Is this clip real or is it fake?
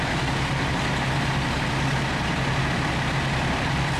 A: real